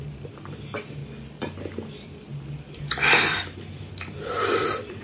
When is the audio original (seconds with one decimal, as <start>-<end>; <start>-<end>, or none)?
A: 1.0-1.9; 2.3-3.2